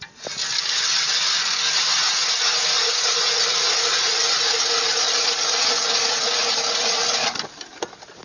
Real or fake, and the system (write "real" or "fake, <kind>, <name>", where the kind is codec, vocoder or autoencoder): real